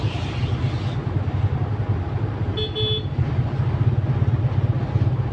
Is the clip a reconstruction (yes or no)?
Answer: no